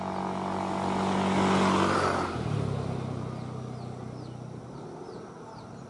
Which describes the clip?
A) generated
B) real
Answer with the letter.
B